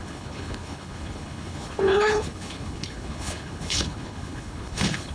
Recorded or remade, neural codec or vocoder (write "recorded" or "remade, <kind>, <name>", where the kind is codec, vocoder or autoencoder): remade, codec, HILCodec